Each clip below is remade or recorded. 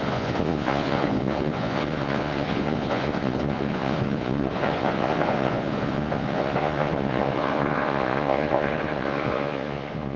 remade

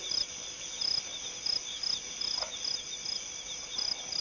recorded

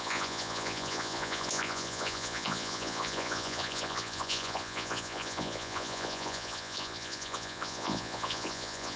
remade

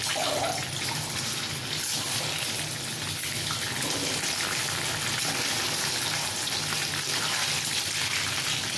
recorded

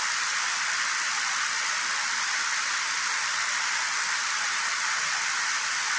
recorded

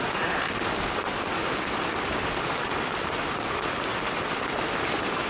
recorded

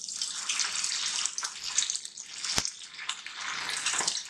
recorded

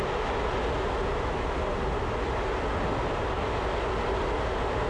recorded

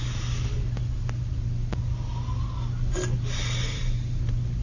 recorded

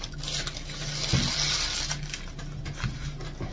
recorded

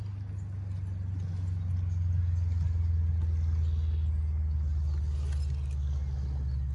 recorded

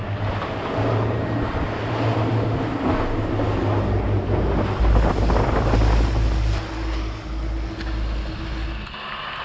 recorded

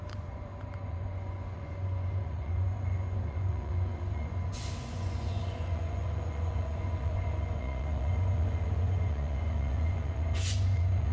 remade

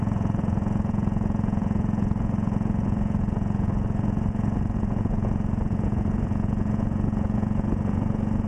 remade